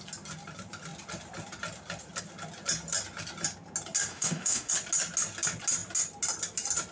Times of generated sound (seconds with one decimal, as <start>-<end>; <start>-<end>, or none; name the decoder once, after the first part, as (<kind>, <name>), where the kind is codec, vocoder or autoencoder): 4.1-4.7 (autoencoder, DAC-VAE)